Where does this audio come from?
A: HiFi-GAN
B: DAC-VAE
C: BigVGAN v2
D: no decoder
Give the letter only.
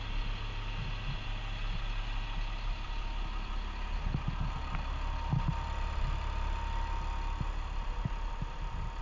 D